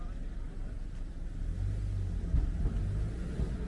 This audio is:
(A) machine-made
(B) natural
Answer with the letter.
B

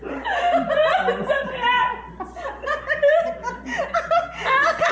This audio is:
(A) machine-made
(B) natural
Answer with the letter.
B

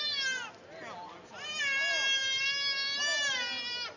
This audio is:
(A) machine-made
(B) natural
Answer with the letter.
B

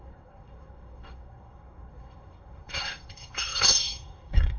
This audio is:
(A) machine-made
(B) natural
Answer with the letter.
A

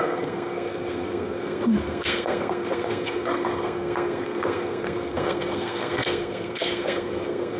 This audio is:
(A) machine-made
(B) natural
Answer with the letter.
A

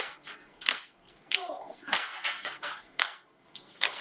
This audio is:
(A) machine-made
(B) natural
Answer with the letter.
A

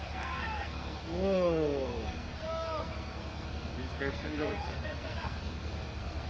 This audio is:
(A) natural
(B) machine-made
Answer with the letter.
B